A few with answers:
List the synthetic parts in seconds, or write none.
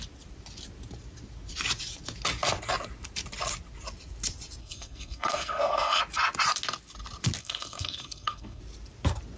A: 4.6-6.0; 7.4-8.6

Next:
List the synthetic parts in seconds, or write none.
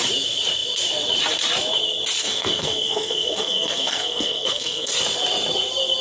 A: 2.2-4.9